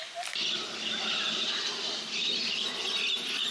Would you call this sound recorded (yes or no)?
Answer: yes